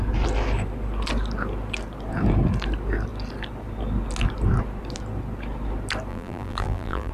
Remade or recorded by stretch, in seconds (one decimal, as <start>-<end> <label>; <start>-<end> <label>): 0.0-6.1 recorded; 6.1-7.1 remade